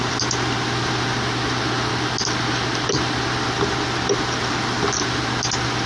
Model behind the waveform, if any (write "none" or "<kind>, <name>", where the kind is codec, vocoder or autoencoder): none